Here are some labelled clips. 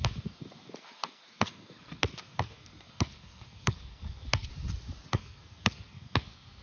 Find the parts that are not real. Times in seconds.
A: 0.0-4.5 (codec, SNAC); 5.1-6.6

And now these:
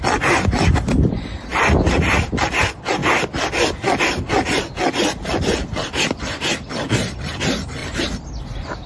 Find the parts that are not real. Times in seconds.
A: none

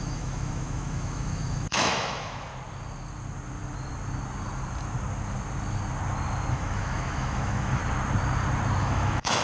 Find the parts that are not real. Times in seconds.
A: 0.0-2.5 (autoencoder, DAC-VAE); 6.5-7.8; 8.8-9.4

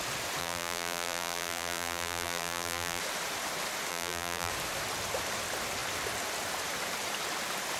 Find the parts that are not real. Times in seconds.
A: 0.4-3.0 (vocoder, BigVGAN v2); 3.9-4.5

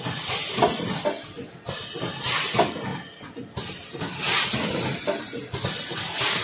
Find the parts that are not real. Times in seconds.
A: none

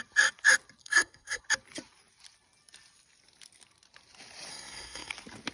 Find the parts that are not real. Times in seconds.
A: 0.8-1.4 (codec, SNAC); 4.5-5.1

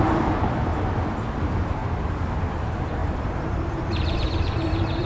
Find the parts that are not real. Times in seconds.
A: 0.0-0.7 (vocoder, BigVGAN v2); 1.4-1.8; 2.4-5.1

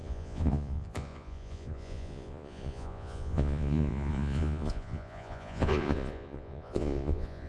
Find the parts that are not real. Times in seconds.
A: 0.0-7.5 (vocoder, Vocos)